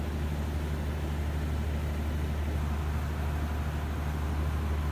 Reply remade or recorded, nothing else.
recorded